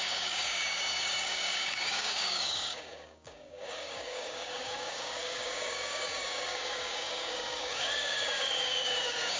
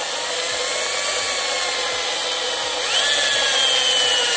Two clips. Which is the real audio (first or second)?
second